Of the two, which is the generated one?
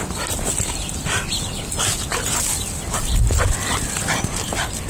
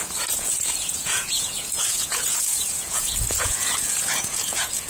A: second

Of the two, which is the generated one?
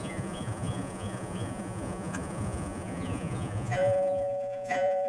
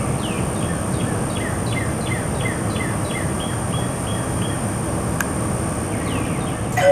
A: first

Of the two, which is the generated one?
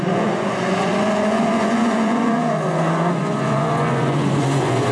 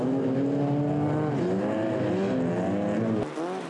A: first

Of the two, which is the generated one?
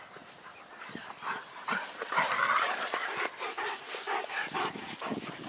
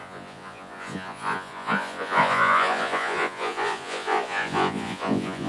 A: second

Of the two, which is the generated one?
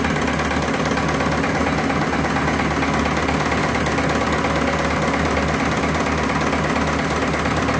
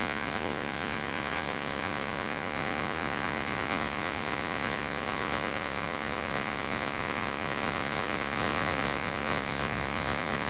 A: second